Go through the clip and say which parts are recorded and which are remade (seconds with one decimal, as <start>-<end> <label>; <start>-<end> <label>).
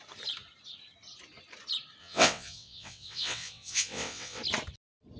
0.0-2.0 recorded; 2.0-4.4 remade; 4.4-5.2 recorded